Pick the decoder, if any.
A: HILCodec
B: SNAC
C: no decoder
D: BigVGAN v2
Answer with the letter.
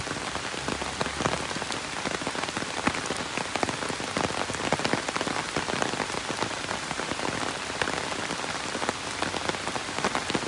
C